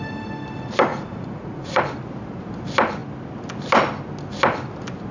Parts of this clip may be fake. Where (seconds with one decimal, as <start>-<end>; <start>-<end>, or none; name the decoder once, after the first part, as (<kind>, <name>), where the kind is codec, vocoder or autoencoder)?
0.9-1.8 (vocoder, Vocos)